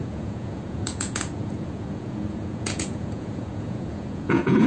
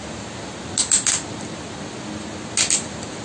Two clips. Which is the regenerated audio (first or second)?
first